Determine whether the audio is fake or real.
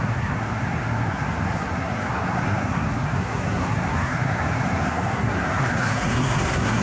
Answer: fake